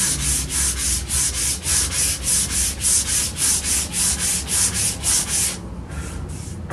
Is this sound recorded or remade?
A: recorded